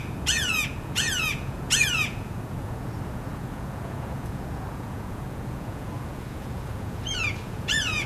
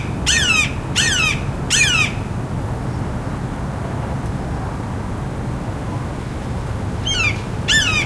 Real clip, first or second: second